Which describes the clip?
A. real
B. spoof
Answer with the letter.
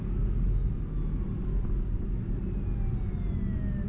A